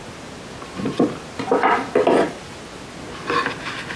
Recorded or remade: recorded